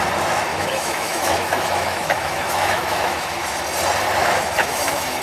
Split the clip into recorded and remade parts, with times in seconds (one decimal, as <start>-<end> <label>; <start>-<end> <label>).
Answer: 0.0-0.5 recorded; 0.5-3.6 remade; 3.6-4.2 recorded; 4.2-5.2 remade